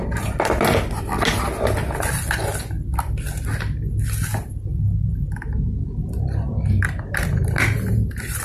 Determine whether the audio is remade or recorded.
recorded